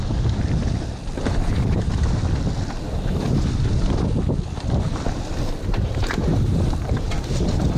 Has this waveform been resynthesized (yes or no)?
no